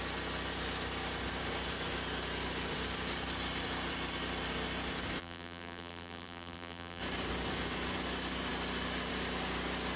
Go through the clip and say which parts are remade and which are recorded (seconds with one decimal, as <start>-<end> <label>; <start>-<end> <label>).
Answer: 0.0-5.2 recorded; 5.2-7.0 remade; 7.0-10.0 recorded